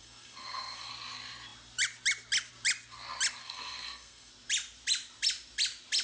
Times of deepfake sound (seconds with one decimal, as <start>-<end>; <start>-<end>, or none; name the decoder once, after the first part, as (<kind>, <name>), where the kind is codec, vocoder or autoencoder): 0.0-0.9 (codec, SNAC); 3.4-4.3